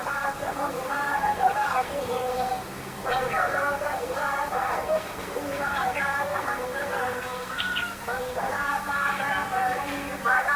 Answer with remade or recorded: remade